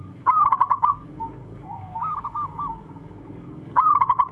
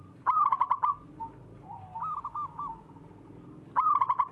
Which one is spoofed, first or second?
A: first